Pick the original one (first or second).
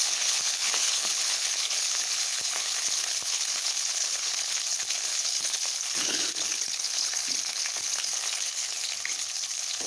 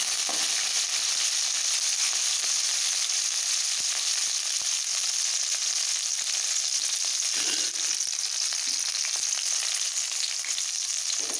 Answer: second